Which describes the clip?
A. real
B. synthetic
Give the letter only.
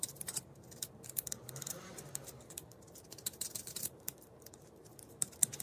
B